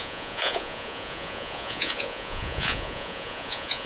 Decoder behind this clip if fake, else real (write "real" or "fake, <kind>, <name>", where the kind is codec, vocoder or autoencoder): fake, vocoder, Vocos